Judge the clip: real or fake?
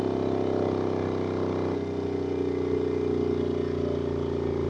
real